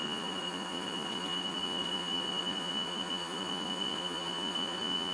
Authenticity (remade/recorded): remade